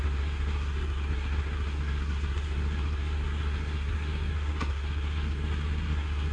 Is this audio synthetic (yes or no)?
yes